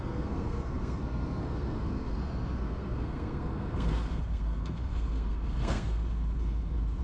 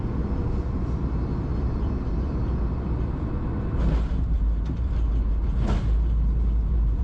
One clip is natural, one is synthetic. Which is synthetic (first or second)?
first